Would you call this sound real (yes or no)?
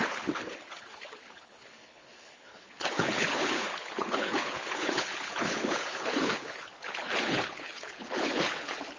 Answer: no